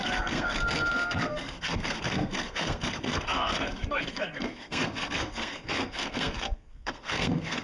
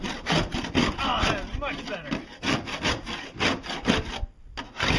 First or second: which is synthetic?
first